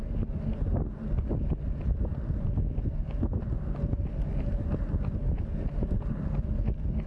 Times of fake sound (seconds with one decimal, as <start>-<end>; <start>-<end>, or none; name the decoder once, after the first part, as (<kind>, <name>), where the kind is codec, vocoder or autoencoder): none